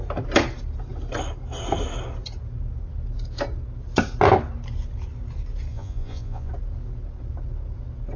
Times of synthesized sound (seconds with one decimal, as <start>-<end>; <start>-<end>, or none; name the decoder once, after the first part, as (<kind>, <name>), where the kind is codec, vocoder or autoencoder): 5.7-6.5 (vocoder, Vocos)